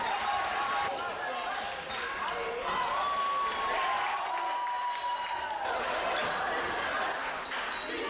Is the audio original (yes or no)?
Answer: yes